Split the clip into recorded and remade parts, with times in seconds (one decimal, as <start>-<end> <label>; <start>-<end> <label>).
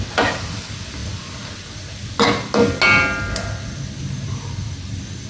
0.0-5.3 recorded